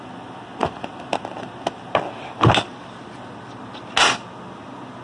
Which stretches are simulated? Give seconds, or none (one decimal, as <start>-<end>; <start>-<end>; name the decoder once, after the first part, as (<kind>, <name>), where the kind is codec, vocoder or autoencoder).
none